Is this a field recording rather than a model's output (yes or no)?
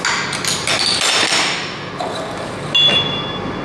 yes